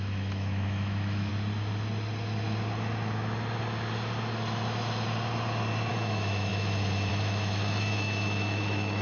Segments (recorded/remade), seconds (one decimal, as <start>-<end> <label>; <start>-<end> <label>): 0.0-1.3 remade; 1.3-5.9 recorded; 5.9-9.0 remade